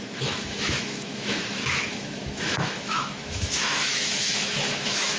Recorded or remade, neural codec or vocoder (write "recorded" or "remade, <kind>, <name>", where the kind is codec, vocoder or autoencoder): remade, autoencoder, DAC-VAE